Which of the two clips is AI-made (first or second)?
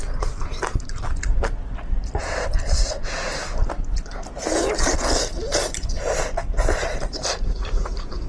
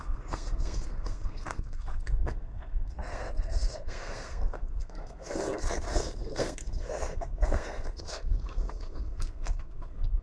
second